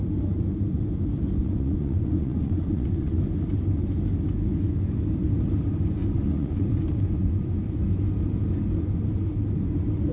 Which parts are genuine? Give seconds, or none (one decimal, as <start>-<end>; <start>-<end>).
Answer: 0.0-1.4; 3.2-6.0; 7.6-10.1